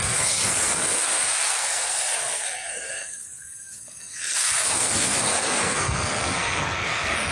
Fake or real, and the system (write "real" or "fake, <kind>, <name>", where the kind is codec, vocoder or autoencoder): fake, codec, SNAC